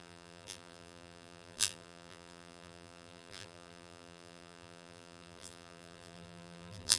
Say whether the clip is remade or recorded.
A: remade